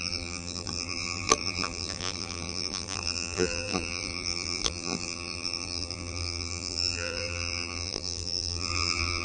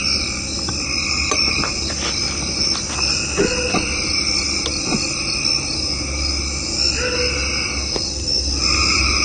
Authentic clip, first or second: second